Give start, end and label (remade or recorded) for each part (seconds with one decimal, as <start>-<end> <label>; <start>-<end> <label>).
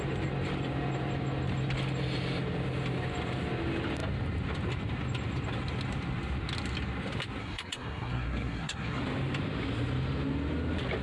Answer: 0.0-7.4 recorded; 7.4-9.0 remade; 9.0-11.0 recorded